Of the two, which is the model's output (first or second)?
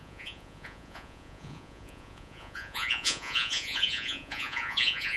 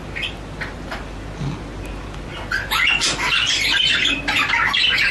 first